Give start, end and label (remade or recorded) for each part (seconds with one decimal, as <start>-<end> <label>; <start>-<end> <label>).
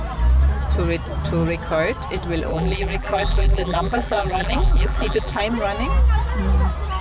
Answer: 0.0-2.5 recorded; 2.5-5.4 remade; 5.4-7.0 recorded